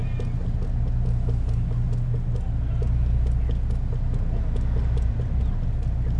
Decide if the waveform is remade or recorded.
recorded